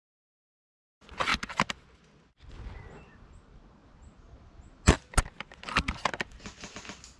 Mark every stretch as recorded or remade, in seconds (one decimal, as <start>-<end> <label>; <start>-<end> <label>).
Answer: 0.0-7.2 recorded

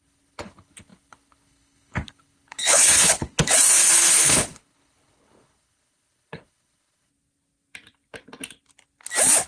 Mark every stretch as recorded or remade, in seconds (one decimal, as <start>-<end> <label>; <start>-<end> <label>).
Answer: 0.0-7.1 remade; 7.1-9.5 recorded

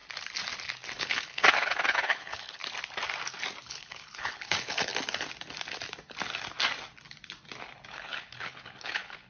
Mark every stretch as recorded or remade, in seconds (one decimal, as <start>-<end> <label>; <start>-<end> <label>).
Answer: 0.0-1.0 recorded; 1.0-2.6 remade; 2.6-3.6 recorded; 3.6-4.9 remade; 4.9-7.9 recorded; 7.9-9.3 remade